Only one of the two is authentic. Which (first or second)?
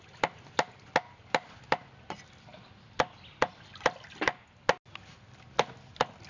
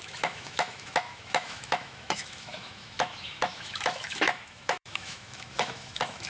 first